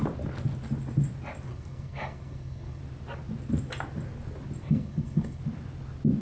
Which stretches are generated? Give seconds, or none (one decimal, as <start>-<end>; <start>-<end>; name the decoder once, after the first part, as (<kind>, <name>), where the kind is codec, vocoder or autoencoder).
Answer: 1.5-2.8 (codec, SNAC); 4.6-5.4